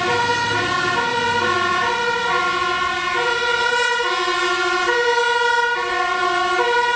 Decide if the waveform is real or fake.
real